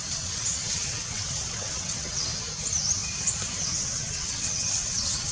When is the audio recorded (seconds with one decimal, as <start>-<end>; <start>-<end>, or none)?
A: 2.3-3.6